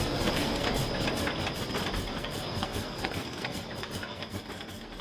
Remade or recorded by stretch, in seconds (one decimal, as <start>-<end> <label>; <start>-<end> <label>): 0.0-0.8 remade; 0.8-2.1 recorded; 2.1-5.0 remade